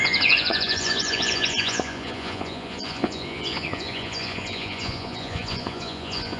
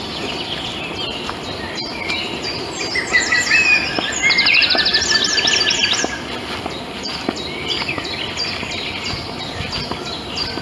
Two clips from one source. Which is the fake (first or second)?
first